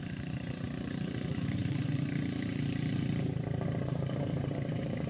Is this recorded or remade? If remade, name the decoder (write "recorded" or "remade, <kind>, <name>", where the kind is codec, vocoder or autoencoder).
remade, vocoder, BigVGAN v2